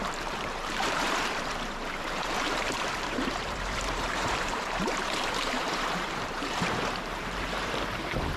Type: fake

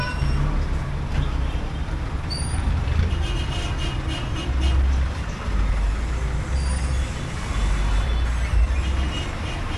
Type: real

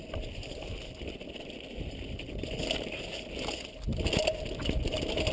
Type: real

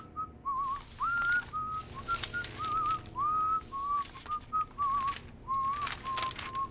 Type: real